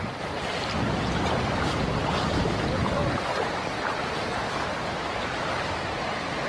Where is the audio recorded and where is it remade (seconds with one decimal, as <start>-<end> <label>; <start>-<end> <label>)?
0.0-6.5 recorded